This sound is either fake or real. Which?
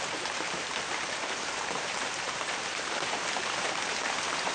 fake